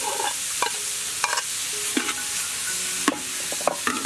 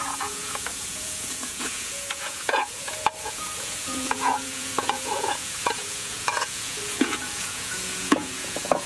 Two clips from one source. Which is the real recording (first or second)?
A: first